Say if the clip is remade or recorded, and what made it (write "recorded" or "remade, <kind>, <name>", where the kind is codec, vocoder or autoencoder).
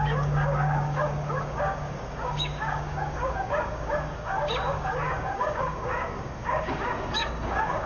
remade, codec, DAC